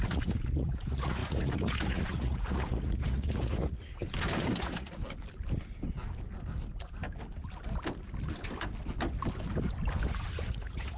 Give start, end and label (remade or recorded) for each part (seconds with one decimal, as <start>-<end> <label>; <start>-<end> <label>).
0.0-4.0 remade; 4.0-4.6 recorded; 4.6-5.0 remade; 5.0-10.1 recorded; 10.1-11.0 remade